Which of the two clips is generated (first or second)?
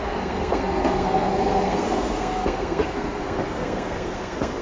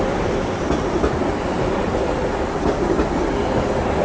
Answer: first